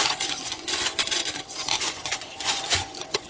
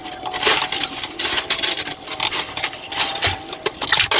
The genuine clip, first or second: second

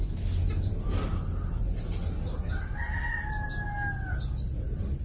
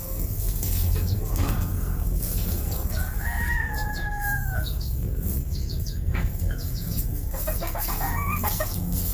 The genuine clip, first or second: first